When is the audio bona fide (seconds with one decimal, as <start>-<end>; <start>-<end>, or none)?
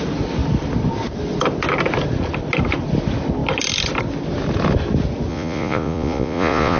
0.0-5.3